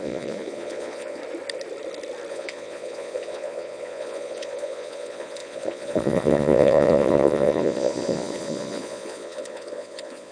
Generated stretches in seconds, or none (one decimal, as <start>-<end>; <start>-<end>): 0.0-1.2; 2.3-10.3